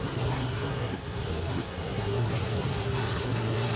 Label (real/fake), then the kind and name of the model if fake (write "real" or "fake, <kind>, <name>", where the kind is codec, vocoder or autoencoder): fake, codec, SNAC